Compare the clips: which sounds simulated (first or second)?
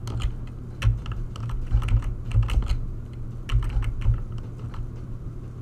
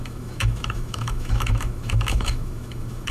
second